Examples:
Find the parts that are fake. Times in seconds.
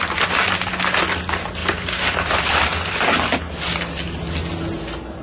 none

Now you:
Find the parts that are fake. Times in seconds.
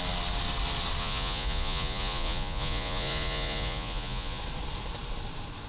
1.0-4.4 (vocoder, Vocos)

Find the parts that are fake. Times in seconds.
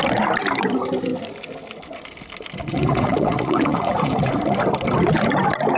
2.7-4.3 (vocoder, Vocos)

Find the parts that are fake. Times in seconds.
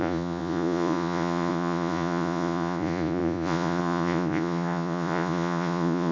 0.0-6.1 (vocoder, Vocos)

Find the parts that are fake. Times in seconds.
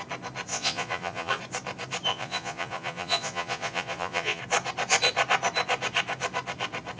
0.5-1.4 (vocoder, Vocos); 2.1-4.4